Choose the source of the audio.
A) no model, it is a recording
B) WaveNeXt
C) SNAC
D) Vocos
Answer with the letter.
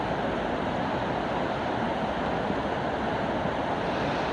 A